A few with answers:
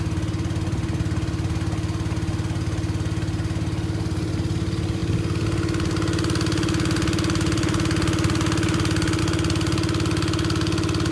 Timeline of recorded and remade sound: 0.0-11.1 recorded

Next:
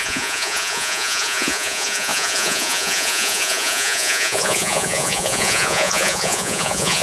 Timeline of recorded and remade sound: 0.0-7.0 remade

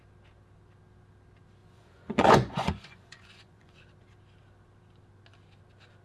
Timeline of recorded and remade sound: 0.0-1.6 recorded; 1.6-3.8 remade; 3.8-6.0 recorded